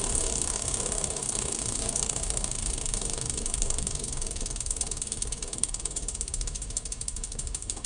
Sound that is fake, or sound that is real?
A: fake